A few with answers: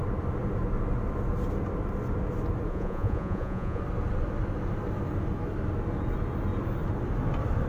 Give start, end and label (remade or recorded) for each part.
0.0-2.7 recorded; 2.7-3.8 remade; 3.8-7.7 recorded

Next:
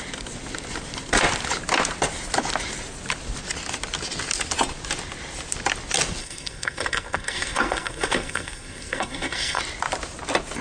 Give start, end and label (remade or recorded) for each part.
0.0-6.2 recorded; 6.2-9.6 remade; 9.6-10.6 recorded

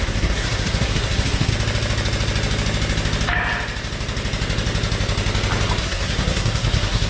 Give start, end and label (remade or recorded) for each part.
0.0-1.5 remade; 1.5-5.8 recorded; 5.8-7.1 remade

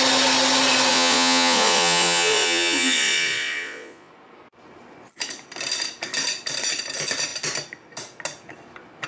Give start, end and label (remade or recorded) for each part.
0.0-0.9 recorded; 0.9-4.1 remade; 4.1-9.1 recorded

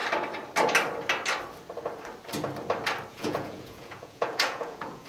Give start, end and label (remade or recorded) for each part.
0.0-3.1 recorded; 3.1-5.1 remade

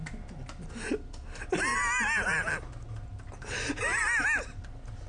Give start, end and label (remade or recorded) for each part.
0.0-5.1 recorded

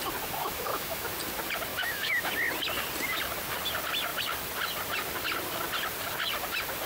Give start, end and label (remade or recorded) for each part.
0.0-0.4 recorded; 0.4-1.1 remade; 1.1-1.7 recorded; 1.7-2.3 remade; 2.3-6.9 recorded